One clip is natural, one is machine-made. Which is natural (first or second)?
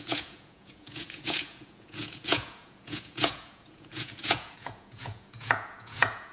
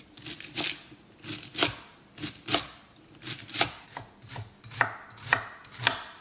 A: second